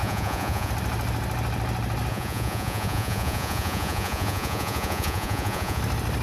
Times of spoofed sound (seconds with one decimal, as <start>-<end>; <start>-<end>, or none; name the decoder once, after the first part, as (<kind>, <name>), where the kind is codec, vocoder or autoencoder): 0.0-0.7 (vocoder, Vocos); 2.1-5.8